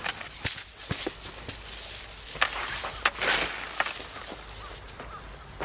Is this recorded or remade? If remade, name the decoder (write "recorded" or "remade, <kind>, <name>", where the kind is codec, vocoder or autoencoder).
recorded